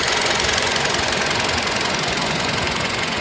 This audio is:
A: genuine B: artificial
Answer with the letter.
B